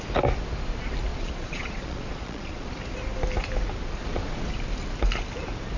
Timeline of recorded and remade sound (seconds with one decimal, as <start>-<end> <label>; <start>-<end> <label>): 0.0-1.1 recorded; 1.1-2.7 remade; 2.7-4.0 recorded; 4.0-4.5 remade; 4.5-5.8 recorded